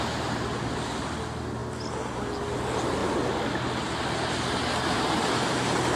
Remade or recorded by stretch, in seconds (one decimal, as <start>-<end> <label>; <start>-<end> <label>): 0.0-6.0 recorded